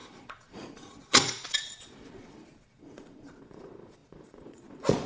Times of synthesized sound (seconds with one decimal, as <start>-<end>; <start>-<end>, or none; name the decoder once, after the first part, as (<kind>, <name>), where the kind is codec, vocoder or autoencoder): 0.0-5.1 (vocoder, Vocos)